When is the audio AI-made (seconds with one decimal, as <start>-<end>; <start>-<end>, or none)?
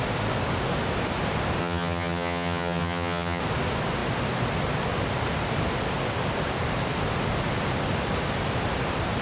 1.6-3.4